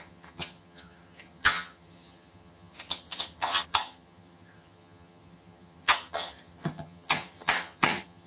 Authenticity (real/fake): fake